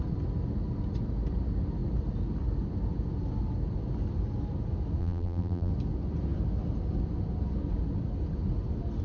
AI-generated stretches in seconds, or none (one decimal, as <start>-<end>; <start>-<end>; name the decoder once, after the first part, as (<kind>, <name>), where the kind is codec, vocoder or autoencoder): 5.0-5.7 (vocoder, BigVGAN v2)